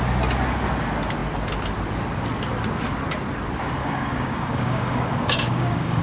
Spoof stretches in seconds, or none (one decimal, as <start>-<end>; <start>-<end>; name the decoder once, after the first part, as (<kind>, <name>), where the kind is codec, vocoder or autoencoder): 3.8-6.0 (codec, DAC)